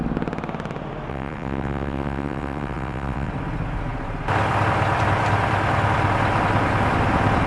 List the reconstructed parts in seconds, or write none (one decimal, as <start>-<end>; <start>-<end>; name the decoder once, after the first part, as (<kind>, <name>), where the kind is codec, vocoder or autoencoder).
1.1-3.3 (vocoder, WaveNeXt)

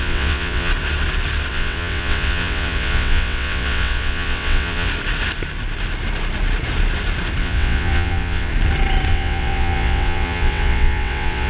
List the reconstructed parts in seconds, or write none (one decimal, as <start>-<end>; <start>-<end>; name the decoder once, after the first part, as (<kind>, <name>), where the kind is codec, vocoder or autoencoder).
0.0-0.7 (vocoder, WaveNeXt); 1.5-4.9; 7.4-8.5; 9.1-11.5

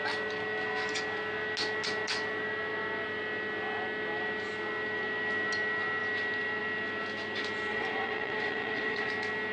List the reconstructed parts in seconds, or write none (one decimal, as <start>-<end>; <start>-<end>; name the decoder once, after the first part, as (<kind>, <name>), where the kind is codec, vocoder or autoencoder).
7.7-9.1 (vocoder, WaveNeXt)